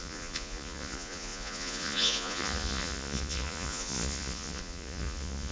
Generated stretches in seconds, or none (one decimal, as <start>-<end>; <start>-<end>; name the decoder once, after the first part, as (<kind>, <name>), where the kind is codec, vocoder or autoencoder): 0.0-5.5 (vocoder, Vocos)